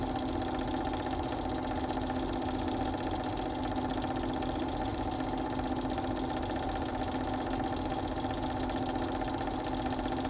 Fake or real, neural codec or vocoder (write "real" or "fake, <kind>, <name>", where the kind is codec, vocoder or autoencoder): real